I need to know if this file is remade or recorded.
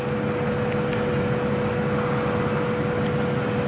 recorded